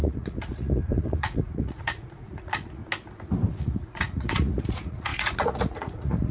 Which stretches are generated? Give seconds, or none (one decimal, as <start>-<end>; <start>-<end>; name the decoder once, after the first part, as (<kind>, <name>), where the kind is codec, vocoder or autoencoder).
0.0-2.8 (vocoder, Vocos); 3.5-6.3